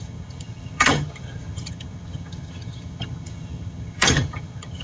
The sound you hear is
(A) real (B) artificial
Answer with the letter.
B